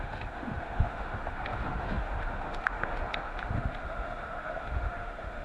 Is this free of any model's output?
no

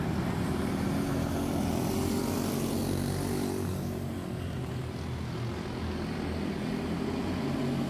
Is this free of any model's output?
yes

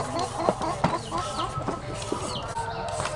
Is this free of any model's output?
yes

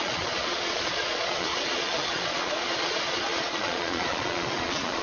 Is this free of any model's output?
no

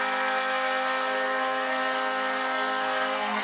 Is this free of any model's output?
no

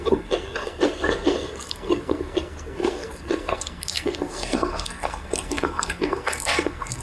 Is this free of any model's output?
no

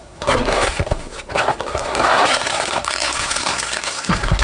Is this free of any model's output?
no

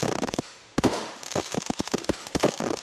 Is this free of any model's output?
no